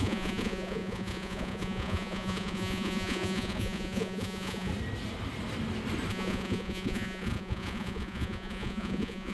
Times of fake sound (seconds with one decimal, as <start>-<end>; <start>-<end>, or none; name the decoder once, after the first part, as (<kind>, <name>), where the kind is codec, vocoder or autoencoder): 0.0-4.7 (vocoder, Vocos); 6.1-9.3